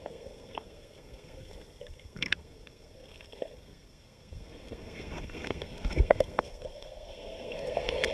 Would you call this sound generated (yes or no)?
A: yes